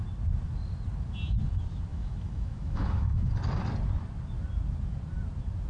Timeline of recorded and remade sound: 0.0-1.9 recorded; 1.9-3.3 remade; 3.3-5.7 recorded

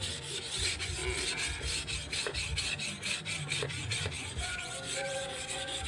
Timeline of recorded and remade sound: 0.0-1.0 remade; 1.0-3.6 recorded; 3.6-5.9 remade

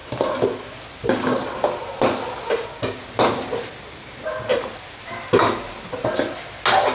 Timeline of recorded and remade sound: 0.0-6.9 recorded